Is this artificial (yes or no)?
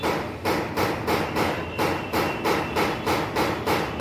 no